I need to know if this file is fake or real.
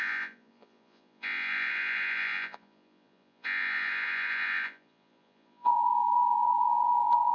fake